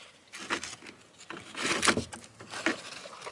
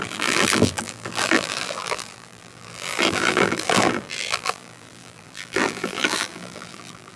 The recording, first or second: first